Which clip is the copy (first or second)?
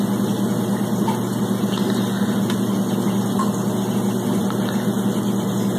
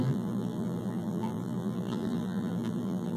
second